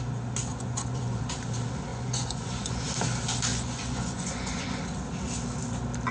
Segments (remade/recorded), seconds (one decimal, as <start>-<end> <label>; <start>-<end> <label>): 0.0-0.5 recorded; 0.5-1.2 remade; 1.2-1.9 recorded; 1.9-2.8 remade; 2.8-3.5 recorded; 3.5-4.8 remade; 4.8-6.1 recorded